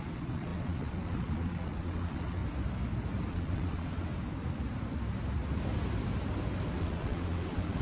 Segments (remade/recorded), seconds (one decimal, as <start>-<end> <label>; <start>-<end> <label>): 0.0-2.4 remade; 2.4-3.3 recorded; 3.3-4.1 remade; 4.1-6.8 recorded; 6.8-7.8 remade